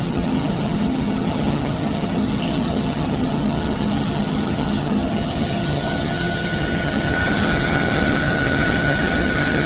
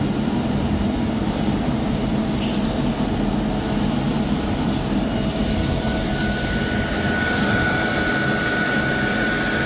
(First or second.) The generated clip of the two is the first